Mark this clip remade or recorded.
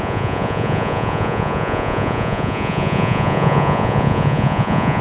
remade